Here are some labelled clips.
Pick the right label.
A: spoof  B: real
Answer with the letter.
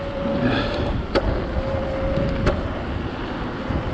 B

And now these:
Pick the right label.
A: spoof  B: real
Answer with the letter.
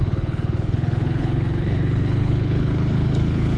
A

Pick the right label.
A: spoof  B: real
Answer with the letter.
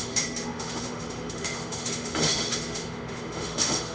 A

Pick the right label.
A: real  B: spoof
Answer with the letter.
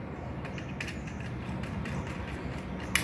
A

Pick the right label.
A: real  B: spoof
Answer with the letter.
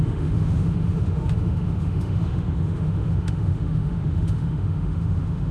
B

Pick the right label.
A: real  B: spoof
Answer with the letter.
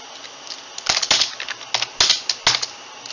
A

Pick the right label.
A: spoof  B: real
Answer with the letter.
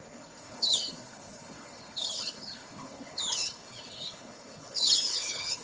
A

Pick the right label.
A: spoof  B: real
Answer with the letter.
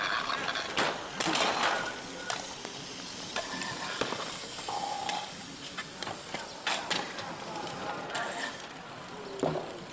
B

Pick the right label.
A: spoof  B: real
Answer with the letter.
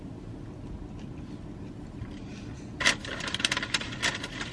B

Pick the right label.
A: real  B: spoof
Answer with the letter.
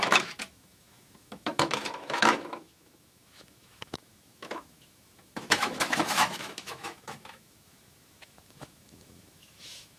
B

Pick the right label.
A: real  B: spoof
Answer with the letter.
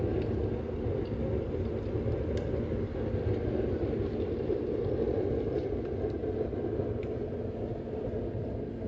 A